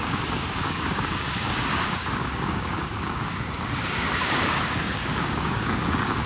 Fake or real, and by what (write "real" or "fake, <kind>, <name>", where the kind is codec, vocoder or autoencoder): fake, codec, DAC